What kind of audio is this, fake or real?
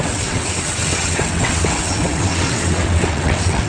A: fake